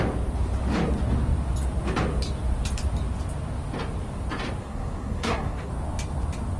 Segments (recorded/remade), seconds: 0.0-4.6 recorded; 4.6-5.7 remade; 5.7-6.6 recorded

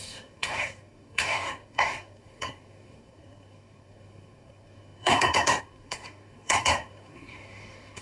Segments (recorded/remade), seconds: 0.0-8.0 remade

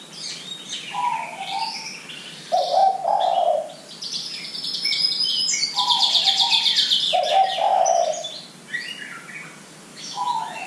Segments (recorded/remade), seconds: 0.0-9.9 recorded; 9.9-10.7 remade

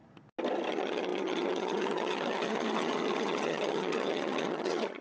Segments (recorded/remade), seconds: 0.0-0.7 recorded; 0.7-5.0 remade